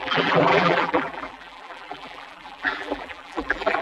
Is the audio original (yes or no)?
no